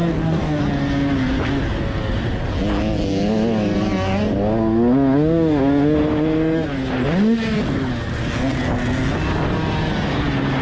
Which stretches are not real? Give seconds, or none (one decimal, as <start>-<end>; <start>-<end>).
0.0-0.6